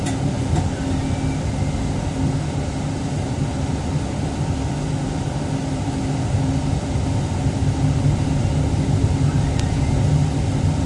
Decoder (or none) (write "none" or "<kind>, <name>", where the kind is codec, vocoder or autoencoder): none